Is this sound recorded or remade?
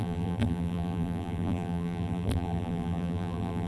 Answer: remade